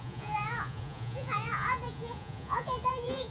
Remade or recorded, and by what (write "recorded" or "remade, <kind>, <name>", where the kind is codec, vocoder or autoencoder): remade, vocoder, Vocos